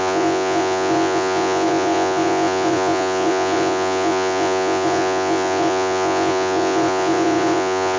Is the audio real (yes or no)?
no